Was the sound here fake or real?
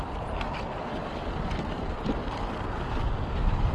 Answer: real